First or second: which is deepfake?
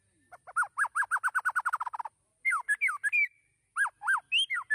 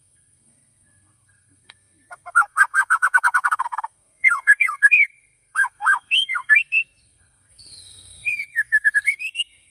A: second